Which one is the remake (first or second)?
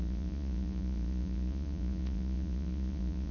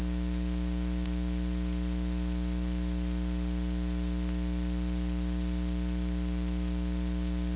first